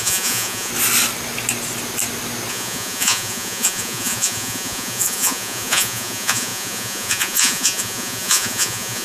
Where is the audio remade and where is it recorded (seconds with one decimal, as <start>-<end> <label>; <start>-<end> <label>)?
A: 0.0-0.7 remade; 0.7-2.5 recorded; 2.5-9.0 remade